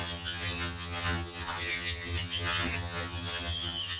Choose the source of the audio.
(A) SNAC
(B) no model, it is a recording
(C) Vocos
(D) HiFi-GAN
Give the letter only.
D